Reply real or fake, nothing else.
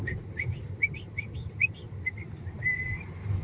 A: real